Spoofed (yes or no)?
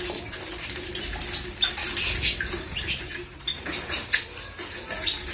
no